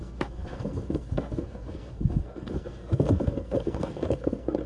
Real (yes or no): no